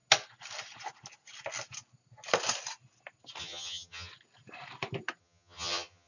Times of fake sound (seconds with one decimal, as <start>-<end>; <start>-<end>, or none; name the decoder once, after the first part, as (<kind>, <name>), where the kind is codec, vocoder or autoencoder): 3.4-4.1 (vocoder, HiFi-GAN); 5.2-6.1